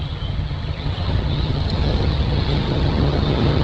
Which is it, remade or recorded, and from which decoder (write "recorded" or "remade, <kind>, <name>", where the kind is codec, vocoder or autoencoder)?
remade, vocoder, HiFi-GAN